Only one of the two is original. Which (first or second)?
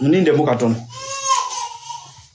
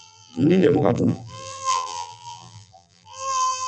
first